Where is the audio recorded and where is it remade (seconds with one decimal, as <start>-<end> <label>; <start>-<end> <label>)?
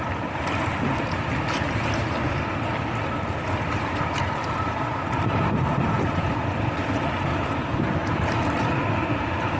0.0-0.7 remade; 0.7-3.1 recorded; 3.1-9.6 remade